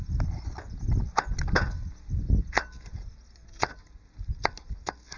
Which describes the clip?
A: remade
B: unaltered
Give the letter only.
B